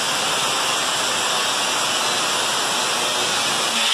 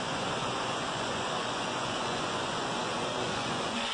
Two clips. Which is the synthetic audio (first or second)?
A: second